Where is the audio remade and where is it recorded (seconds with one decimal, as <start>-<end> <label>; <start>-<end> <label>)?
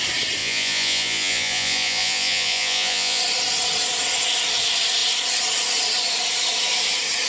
0.0-0.4 recorded; 0.4-3.2 remade; 3.2-7.3 recorded